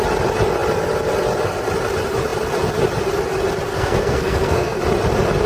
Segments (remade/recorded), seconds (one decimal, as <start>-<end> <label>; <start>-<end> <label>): 0.0-3.7 recorded; 3.7-4.8 remade; 4.8-5.5 recorded